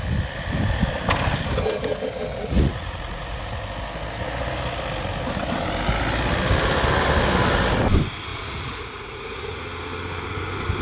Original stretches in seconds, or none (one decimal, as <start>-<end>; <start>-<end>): 0.0-2.3; 3.6-8.3; 9.6-10.8